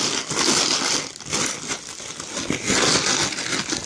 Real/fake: real